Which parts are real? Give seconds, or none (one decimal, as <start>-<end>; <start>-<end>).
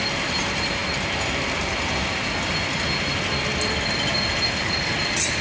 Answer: 0.0-5.4